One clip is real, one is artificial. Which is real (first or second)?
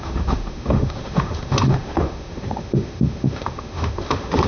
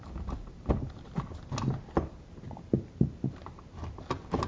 second